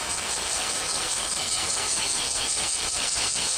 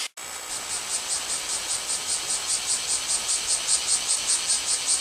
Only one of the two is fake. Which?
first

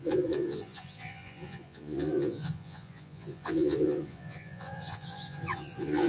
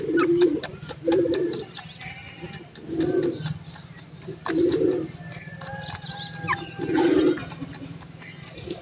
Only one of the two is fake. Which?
first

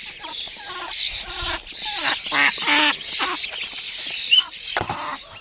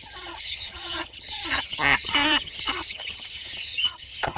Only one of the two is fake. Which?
second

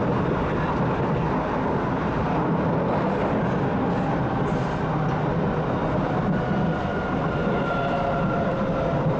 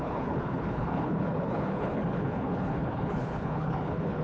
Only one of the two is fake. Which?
second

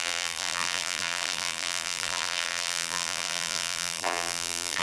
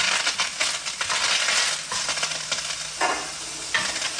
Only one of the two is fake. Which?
first